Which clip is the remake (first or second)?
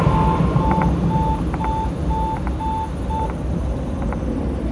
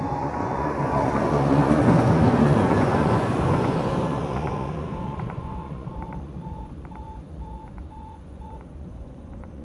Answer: second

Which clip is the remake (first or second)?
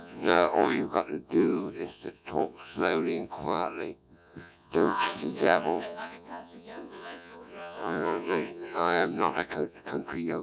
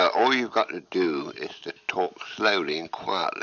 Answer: first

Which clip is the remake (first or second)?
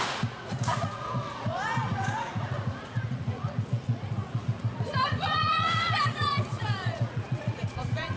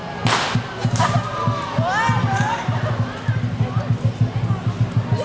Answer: first